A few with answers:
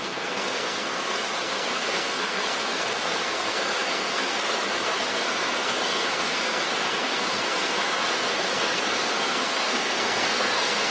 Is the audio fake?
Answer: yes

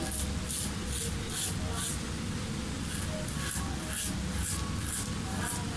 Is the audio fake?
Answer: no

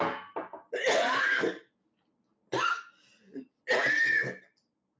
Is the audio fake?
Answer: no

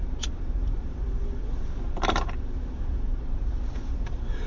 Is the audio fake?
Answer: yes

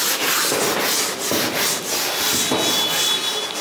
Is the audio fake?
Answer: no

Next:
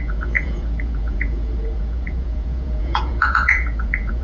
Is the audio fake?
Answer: yes